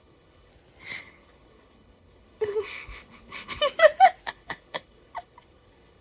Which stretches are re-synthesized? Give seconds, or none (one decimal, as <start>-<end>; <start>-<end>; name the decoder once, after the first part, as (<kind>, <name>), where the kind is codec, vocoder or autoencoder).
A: 0.0-0.5 (codec, HILCodec); 1.0-3.6; 4.3-6.0